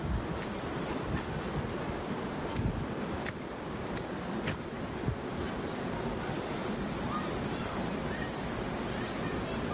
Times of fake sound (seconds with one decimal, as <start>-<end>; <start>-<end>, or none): none